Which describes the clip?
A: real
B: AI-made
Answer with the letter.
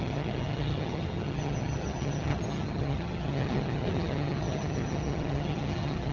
B